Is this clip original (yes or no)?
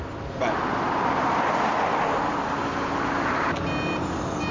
yes